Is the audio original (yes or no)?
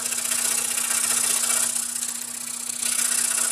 yes